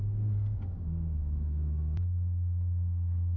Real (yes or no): no